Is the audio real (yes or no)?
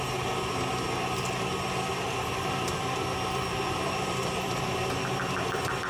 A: no